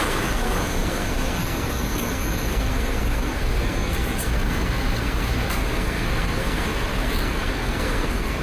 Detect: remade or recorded remade